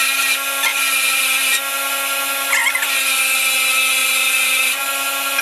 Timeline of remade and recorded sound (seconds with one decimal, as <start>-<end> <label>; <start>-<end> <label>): 0.0-0.7 recorded; 0.7-1.2 remade; 1.2-4.0 recorded; 4.0-4.8 remade; 4.8-5.4 recorded